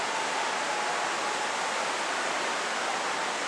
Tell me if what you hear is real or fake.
real